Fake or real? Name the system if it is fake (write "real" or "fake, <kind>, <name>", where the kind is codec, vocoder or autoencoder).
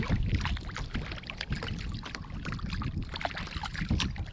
real